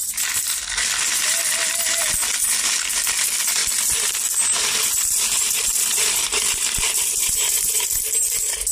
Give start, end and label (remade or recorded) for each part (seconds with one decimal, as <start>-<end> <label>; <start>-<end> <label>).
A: 0.0-1.7 remade; 1.7-3.6 recorded; 3.6-7.8 remade; 7.8-8.7 recorded